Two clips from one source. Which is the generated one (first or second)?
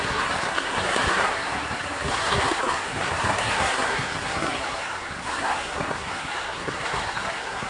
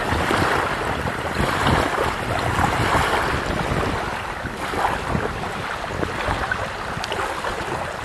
first